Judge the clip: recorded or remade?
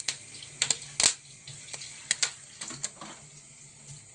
recorded